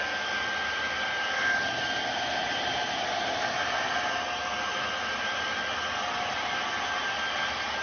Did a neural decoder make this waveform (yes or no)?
no